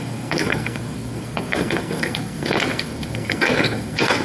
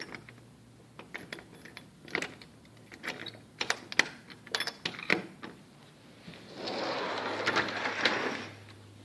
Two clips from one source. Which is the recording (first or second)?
second